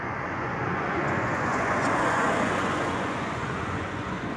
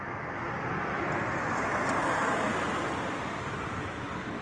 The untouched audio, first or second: second